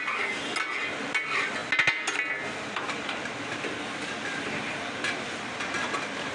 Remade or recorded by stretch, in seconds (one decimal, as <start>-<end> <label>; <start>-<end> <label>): 0.0-6.3 recorded